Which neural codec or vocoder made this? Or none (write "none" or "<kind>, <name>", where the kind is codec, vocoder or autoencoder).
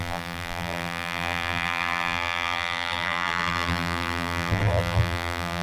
vocoder, BigVGAN v2